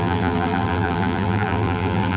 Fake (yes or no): yes